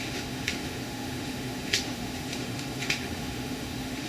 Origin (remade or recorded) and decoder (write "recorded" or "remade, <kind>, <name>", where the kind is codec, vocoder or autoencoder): remade, autoencoder, DAC-VAE